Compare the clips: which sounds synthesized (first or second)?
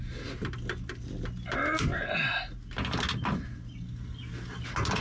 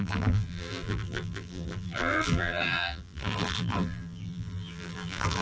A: second